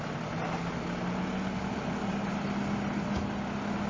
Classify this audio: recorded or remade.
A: recorded